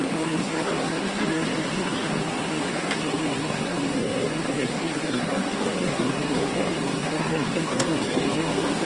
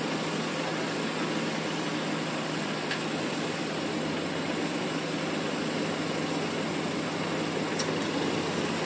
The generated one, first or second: first